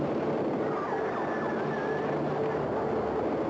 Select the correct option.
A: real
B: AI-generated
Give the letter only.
A